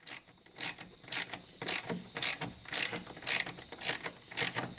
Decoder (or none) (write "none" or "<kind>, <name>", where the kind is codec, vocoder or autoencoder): none